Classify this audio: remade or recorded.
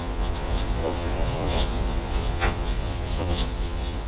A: remade